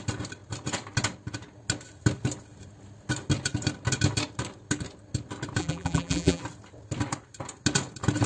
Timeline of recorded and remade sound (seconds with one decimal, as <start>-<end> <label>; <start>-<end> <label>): 0.0-5.6 recorded; 5.6-6.4 remade; 6.4-8.3 recorded